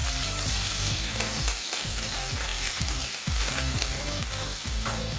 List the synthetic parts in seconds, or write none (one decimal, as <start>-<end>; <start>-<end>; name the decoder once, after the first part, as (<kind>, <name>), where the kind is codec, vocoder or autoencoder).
0.5-5.2 (codec, DAC)